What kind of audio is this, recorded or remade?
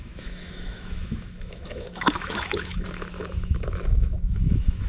remade